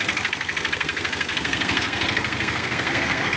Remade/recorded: remade